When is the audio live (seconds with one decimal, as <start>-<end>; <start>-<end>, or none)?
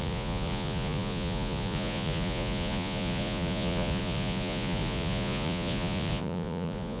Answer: none